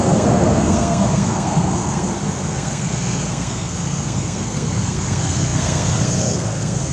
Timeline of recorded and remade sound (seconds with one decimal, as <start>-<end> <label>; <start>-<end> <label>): 0.0-6.9 remade